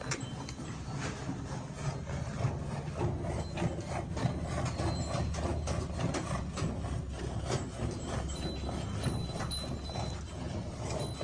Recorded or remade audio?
recorded